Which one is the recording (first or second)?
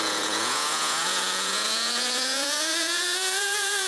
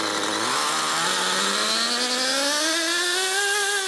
second